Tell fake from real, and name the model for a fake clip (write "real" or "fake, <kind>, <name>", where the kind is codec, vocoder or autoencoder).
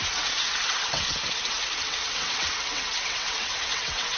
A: fake, vocoder, WaveNeXt